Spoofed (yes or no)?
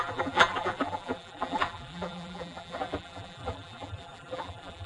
yes